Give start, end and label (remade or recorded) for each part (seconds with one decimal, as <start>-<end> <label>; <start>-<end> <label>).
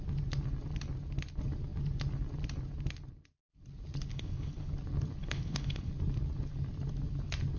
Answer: 0.0-4.1 recorded; 4.1-4.7 remade; 4.7-5.2 recorded; 5.2-5.9 remade; 5.9-7.6 recorded